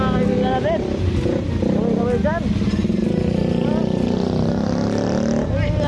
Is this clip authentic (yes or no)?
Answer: yes